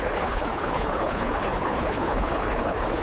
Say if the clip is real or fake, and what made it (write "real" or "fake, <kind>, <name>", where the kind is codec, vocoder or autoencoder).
fake, codec, HILCodec